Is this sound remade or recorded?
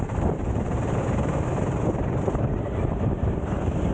remade